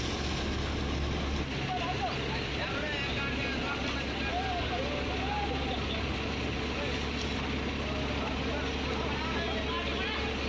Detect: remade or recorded recorded